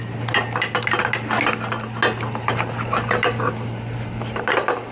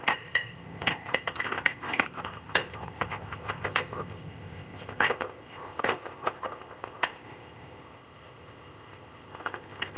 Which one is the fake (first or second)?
second